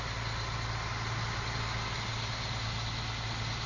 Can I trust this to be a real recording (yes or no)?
yes